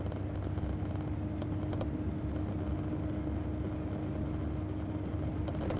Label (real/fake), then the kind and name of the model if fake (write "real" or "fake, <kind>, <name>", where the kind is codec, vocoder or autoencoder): real